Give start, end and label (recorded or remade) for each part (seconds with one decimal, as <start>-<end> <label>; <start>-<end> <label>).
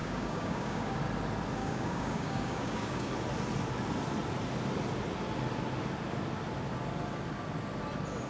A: 0.0-1.0 remade; 1.0-1.6 recorded; 1.6-3.1 remade; 3.1-8.3 recorded